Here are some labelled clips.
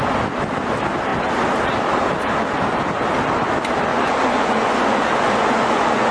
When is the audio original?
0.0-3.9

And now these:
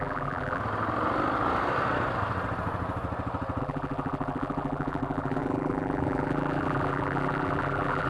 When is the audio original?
0.6-3.6

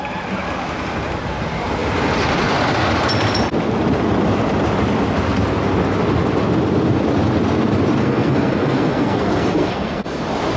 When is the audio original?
0.0-8.0; 10.2-10.6

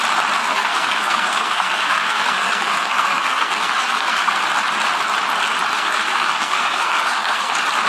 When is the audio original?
0.0-0.4; 4.4-5.7; 7.5-7.9

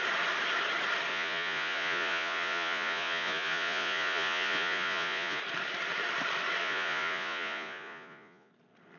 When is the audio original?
0.0-1.1; 5.4-6.6; 8.5-9.0

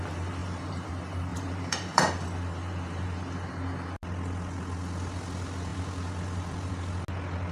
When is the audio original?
0.0-0.4; 0.9-1.3; 2.1-7.5